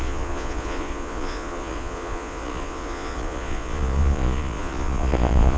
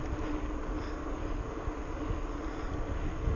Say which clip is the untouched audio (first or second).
second